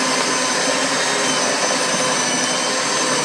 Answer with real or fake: real